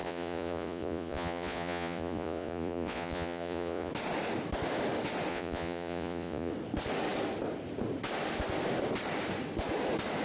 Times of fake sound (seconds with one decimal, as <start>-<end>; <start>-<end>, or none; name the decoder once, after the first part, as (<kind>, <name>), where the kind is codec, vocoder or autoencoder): 0.0-3.9 (vocoder, Vocos); 5.3-6.5